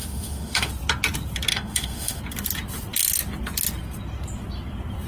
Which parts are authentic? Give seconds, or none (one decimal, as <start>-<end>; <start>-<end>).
0.7-1.5; 2.2-5.1